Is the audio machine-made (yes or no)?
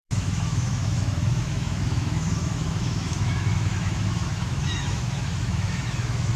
yes